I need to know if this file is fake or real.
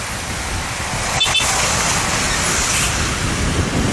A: real